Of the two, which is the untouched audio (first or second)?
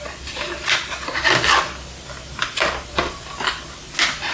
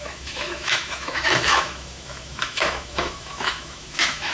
first